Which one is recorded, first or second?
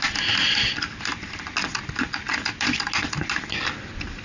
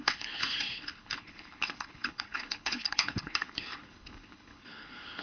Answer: first